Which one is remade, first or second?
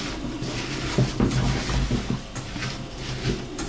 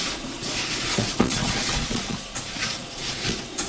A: second